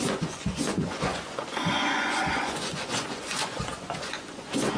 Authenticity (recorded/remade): remade